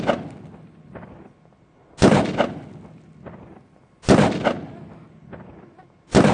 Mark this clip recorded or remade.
recorded